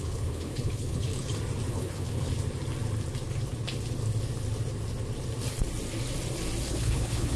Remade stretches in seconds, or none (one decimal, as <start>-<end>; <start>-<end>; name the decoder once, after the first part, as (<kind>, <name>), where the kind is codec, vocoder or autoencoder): 0.0-1.1 (codec, HILCodec); 1.7-2.3; 6.7-7.4